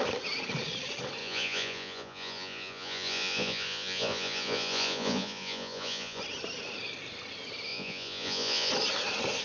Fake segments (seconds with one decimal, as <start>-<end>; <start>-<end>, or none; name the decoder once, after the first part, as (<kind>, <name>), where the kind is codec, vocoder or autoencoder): 1.2-6.2 (vocoder, Vocos); 7.7-8.7